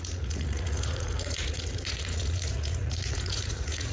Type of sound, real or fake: fake